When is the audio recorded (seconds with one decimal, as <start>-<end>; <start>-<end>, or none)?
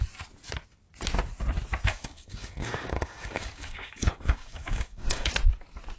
0.0-1.9; 5.3-6.0